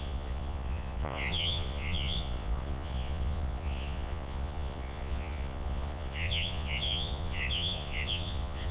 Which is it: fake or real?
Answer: fake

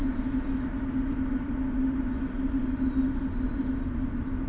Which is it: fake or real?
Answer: real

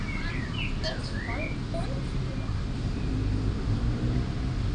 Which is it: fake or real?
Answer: real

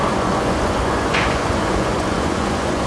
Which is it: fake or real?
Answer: fake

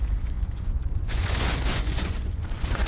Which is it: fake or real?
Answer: fake